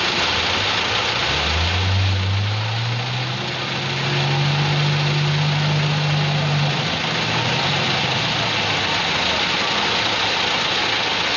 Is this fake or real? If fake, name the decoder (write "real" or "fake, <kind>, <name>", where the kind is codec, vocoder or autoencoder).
real